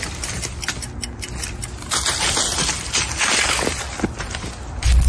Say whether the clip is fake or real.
real